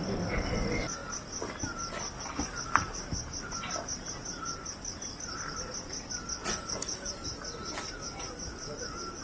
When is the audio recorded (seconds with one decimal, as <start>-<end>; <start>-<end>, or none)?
0.0-6.4; 7.1-9.2